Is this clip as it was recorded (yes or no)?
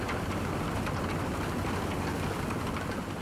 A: yes